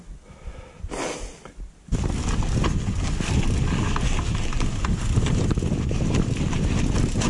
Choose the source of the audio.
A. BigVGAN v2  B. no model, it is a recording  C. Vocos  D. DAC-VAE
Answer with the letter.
B